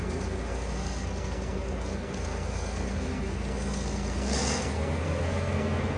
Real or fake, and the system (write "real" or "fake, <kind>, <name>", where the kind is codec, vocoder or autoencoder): fake, codec, SNAC